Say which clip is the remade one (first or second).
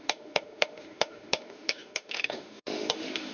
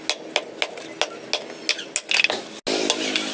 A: first